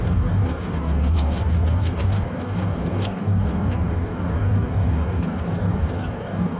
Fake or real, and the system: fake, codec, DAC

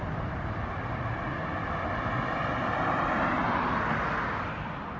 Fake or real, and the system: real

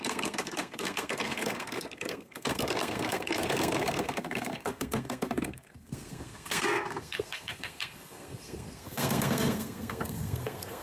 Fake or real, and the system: fake, codec, SNAC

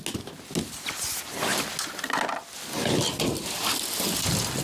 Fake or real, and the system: real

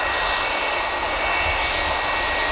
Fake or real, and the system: real